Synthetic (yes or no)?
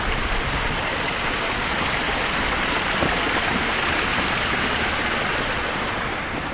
no